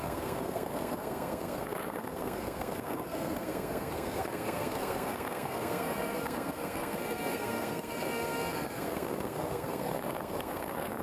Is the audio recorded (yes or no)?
no